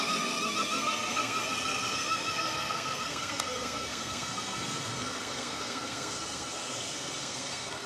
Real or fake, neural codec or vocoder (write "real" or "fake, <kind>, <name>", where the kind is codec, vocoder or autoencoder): fake, codec, SNAC